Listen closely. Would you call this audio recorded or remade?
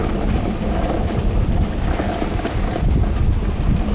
recorded